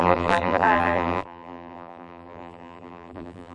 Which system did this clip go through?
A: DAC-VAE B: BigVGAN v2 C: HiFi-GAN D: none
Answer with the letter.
B